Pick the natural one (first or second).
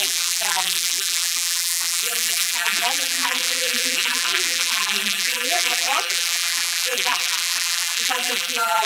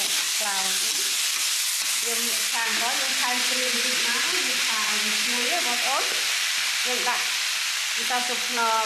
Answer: second